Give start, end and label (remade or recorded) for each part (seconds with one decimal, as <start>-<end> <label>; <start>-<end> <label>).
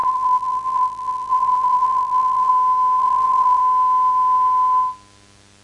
0.0-2.5 remade; 2.5-3.0 recorded; 3.0-3.6 remade; 3.6-5.6 recorded